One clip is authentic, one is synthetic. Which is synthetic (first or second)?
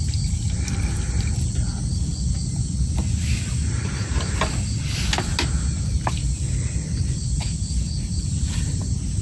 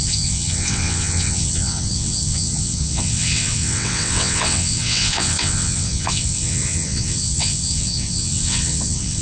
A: second